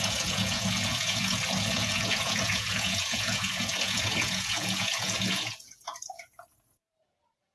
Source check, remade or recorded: remade